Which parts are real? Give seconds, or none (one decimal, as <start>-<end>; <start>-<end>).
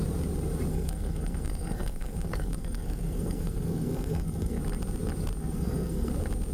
0.0-0.7; 4.6-5.4; 6.1-6.5